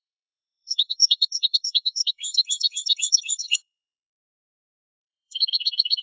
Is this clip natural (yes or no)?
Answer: no